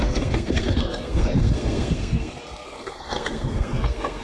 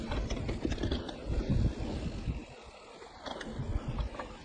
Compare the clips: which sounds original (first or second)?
second